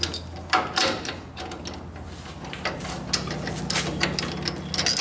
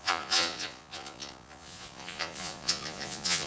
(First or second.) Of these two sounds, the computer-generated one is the second